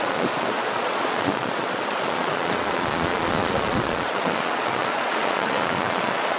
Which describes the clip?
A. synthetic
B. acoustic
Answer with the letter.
A